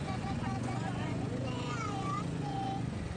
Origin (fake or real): fake